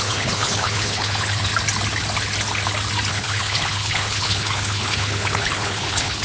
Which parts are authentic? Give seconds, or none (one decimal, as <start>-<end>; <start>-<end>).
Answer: 1.5-3.1